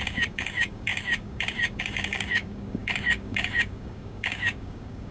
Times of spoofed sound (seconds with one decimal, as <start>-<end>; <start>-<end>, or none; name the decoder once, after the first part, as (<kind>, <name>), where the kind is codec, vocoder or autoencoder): 0.0-5.1 (codec, DAC)